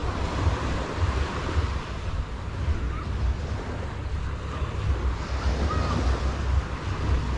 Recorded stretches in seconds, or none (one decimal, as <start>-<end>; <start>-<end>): 2.8-7.4